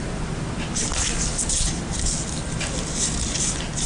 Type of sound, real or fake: real